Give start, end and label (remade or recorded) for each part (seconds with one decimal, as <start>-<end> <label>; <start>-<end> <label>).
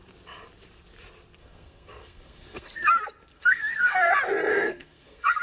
0.0-1.4 recorded; 1.4-2.9 remade; 2.9-3.3 recorded; 3.3-4.1 remade; 4.1-4.5 recorded; 4.5-5.4 remade